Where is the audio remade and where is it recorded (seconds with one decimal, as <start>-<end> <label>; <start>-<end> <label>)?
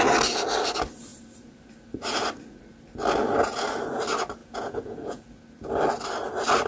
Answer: 0.0-4.4 recorded; 4.4-5.2 remade; 5.2-6.7 recorded